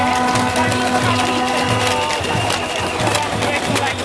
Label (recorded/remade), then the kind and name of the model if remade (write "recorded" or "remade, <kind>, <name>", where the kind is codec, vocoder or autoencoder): recorded